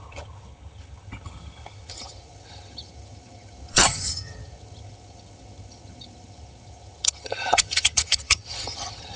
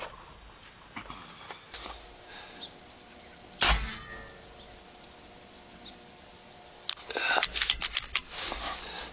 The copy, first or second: first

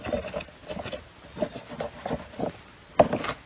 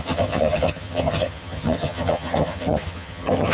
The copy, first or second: second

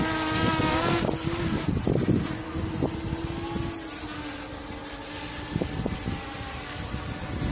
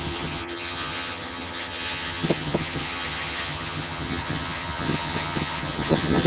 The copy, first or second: second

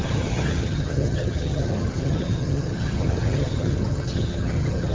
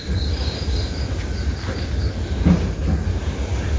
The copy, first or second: first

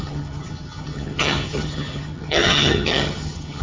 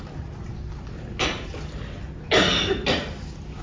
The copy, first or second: first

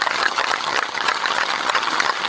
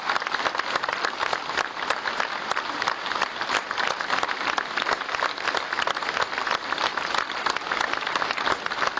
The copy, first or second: first